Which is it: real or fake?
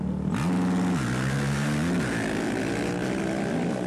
real